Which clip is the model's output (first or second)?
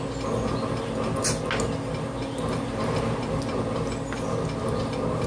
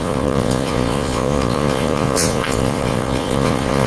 second